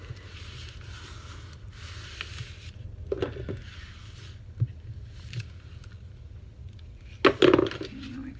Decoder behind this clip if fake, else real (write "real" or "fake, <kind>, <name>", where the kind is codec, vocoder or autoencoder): real